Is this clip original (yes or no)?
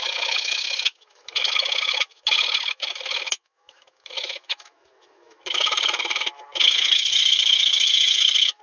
no